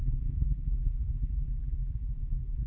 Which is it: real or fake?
fake